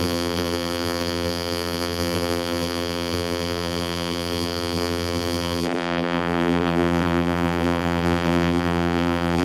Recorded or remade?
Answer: remade